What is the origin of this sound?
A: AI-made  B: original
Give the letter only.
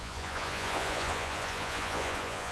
A